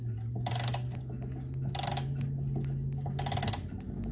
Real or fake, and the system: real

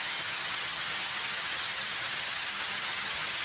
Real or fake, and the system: fake, vocoder, HiFi-GAN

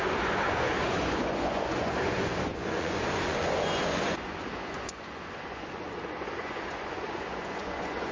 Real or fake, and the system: fake, vocoder, Vocos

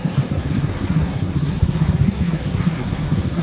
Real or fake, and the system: fake, codec, SNAC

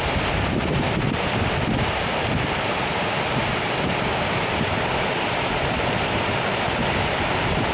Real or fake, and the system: real